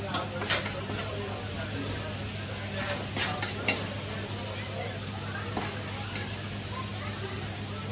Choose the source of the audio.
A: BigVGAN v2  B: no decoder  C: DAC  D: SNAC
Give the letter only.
B